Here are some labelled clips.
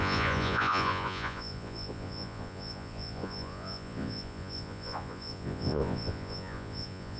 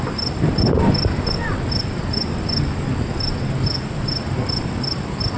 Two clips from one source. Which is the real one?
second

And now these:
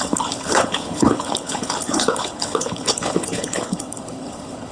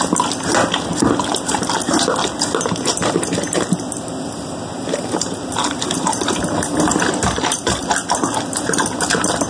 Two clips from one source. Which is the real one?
second